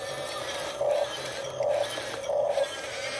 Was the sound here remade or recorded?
recorded